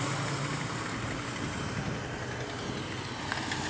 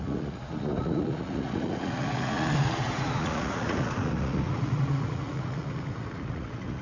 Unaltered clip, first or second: first